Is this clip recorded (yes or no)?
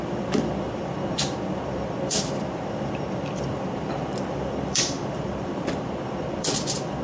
no